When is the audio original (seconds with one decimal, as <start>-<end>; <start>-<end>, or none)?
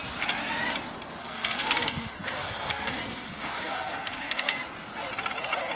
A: 0.0-1.2; 4.6-5.8